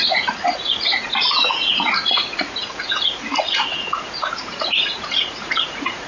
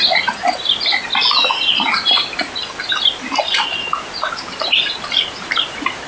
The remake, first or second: first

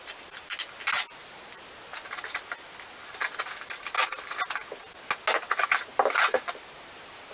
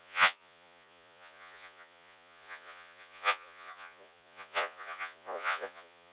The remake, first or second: second